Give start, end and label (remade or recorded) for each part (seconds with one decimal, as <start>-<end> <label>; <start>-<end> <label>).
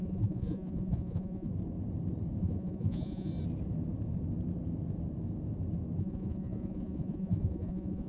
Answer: 0.0-1.5 remade; 1.5-2.4 recorded; 2.4-3.3 remade; 3.3-6.0 recorded; 6.0-8.1 remade